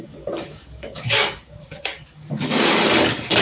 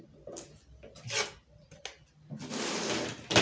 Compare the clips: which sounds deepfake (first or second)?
first